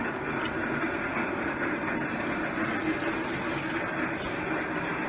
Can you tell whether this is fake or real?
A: real